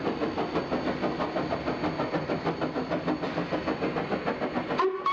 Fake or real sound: real